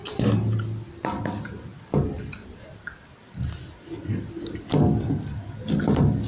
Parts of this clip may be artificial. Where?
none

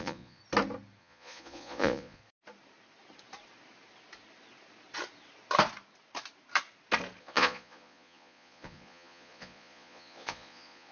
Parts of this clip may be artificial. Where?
0.0-0.4 (vocoder, Vocos); 1.0-2.2; 7.2-10.9

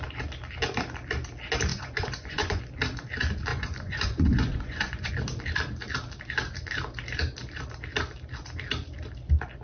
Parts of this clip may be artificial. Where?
1.7-2.6 (vocoder, Vocos); 3.5-5.1

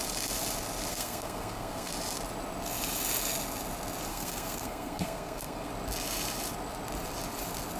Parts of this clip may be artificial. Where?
0.9-1.9 (codec, SNAC); 4.1-5.7